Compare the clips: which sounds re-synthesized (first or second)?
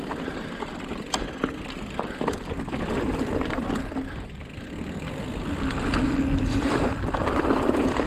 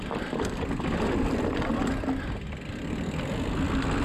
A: first